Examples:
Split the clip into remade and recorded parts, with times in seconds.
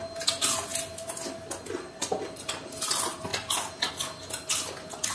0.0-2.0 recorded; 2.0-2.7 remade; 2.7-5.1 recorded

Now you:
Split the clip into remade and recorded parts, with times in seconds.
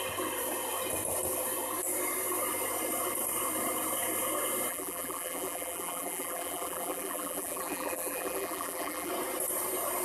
0.0-4.7 recorded; 4.7-9.1 remade; 9.1-10.0 recorded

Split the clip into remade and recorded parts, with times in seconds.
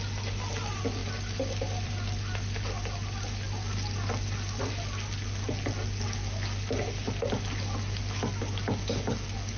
0.0-1.0 recorded; 1.0-4.6 remade; 4.6-9.6 recorded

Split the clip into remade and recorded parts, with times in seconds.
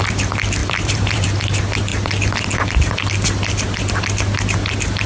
0.0-0.6 recorded; 0.6-1.4 remade; 1.4-5.1 recorded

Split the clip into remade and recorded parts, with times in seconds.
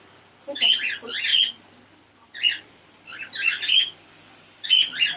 0.0-1.3 remade; 1.3-2.0 recorded; 2.0-5.2 remade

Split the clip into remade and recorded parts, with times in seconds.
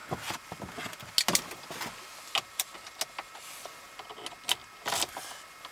0.0-5.7 recorded